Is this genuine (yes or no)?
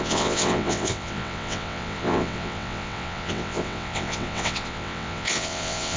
no